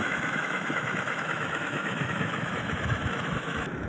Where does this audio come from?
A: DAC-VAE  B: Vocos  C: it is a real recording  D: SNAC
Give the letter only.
A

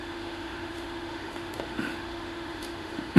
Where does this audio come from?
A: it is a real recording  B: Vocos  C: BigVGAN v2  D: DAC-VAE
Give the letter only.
D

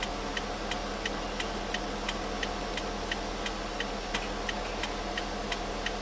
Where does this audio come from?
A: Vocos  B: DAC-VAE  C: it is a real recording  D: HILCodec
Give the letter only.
C